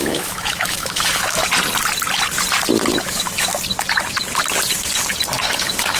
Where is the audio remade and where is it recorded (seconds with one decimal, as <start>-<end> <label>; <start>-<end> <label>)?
0.0-1.4 remade; 1.4-2.9 recorded; 2.9-3.5 remade; 3.5-5.4 recorded; 5.4-6.0 remade